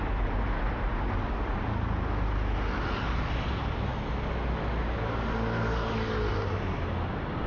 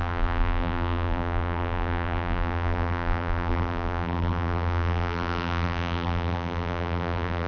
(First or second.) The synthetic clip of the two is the second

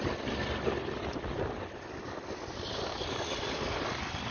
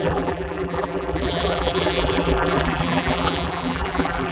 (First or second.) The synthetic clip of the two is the second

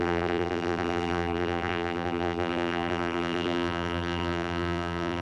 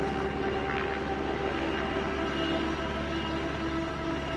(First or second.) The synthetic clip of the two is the first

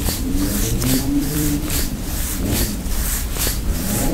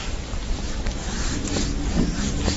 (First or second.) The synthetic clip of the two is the first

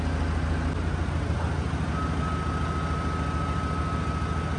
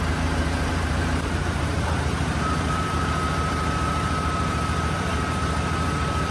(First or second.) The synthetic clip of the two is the second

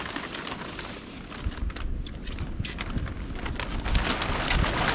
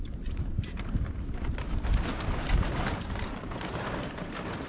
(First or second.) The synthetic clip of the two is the second